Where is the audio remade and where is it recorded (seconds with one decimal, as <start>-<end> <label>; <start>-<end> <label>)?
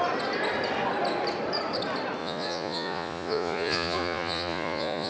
0.0-2.2 recorded; 2.2-5.1 remade